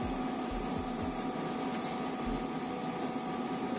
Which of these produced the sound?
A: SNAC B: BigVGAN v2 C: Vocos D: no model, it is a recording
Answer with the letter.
D